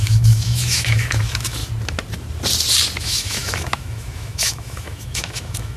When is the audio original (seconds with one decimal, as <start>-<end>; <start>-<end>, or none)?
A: 1.6-3.0